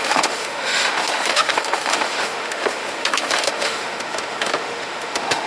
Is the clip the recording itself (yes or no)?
no